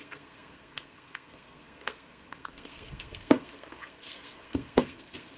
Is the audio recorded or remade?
remade